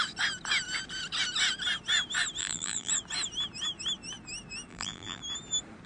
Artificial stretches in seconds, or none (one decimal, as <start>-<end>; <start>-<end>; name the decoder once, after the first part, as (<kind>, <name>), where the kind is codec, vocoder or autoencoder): 2.4-2.9 (vocoder, BigVGAN v2); 4.7-5.2